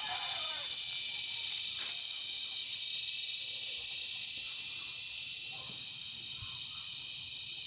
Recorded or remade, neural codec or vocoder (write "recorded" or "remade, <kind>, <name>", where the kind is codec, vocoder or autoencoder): recorded